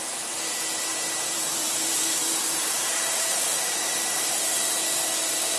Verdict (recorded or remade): remade